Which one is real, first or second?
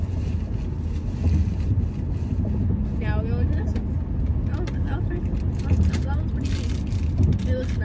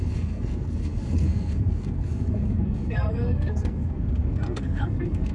first